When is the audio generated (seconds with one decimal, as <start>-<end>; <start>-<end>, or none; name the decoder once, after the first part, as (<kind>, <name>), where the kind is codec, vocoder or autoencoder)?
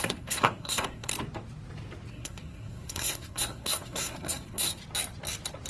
0.0-1.1 (codec, SNAC); 2.1-4.8